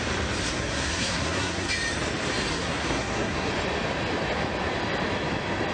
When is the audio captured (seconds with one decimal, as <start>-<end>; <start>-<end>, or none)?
0.0-0.4; 1.7-2.5; 3.5-5.7